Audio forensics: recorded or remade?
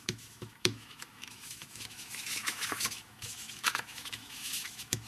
remade